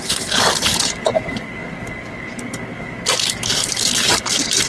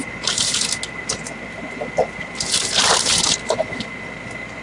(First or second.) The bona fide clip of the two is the second